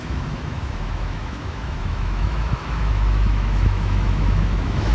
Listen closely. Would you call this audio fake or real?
fake